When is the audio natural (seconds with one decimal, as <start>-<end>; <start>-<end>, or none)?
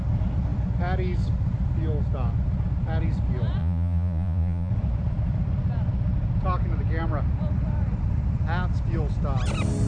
0.0-3.6; 4.7-9.9